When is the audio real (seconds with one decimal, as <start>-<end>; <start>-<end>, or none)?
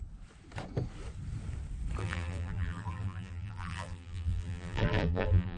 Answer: 0.0-2.0